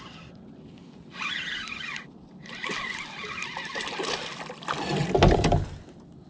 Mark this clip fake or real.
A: real